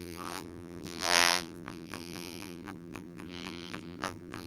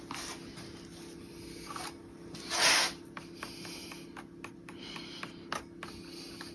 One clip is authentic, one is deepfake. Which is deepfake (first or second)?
first